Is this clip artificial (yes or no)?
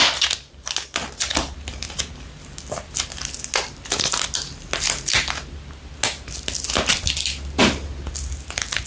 no